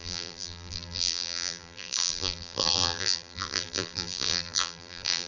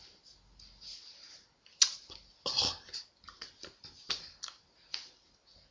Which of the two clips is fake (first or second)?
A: first